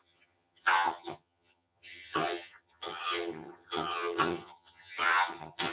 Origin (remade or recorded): remade